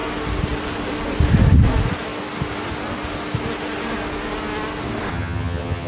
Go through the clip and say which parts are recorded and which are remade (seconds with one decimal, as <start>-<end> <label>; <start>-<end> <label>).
0.0-5.1 recorded; 5.1-5.9 remade